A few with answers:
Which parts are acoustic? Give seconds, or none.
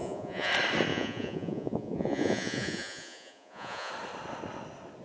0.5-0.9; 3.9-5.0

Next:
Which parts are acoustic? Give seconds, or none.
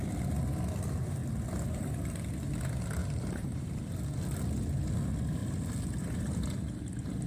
0.0-3.0; 3.9-7.3